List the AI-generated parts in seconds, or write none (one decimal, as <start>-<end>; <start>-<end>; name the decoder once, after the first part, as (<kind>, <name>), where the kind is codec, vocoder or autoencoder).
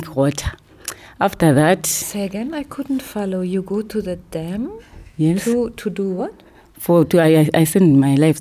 5.0-6.2 (autoencoder, DAC-VAE)